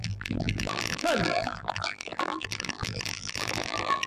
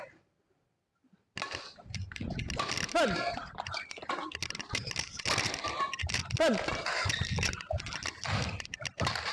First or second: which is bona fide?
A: second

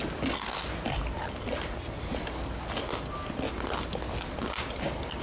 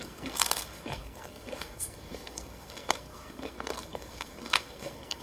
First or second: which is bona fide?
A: first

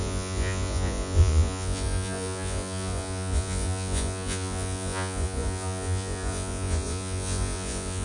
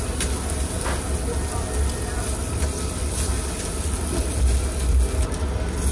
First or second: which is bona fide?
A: second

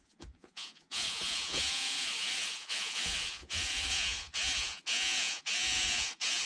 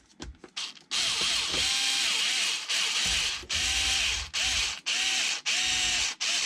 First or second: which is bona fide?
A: second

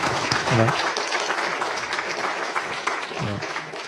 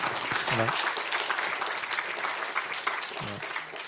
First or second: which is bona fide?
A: second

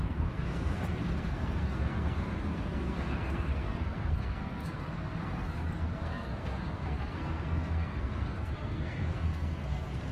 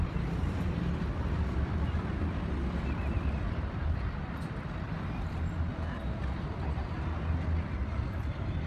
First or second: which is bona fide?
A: second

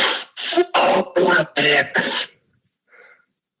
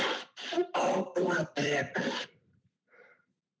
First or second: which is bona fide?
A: first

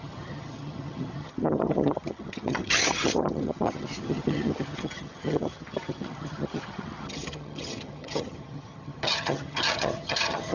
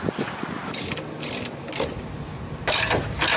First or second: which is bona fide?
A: second